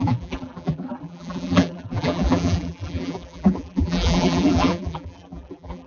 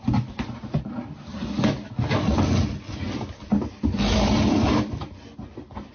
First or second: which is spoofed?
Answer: first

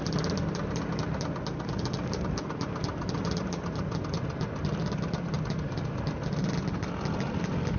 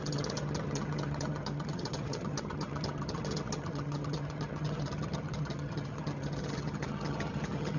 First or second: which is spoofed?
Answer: second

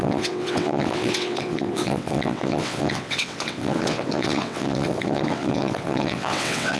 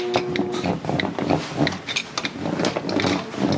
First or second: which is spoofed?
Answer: first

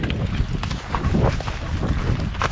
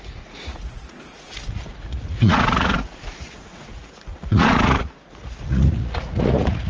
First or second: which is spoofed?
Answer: second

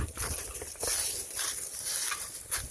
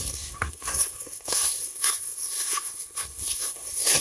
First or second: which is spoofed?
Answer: second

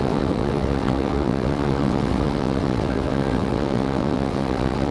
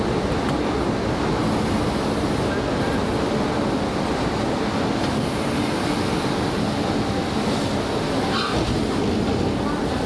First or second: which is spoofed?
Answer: first